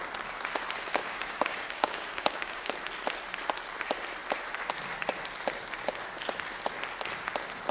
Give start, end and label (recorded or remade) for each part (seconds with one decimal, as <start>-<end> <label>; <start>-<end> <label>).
0.0-1.0 recorded; 1.0-2.7 remade; 2.7-7.7 recorded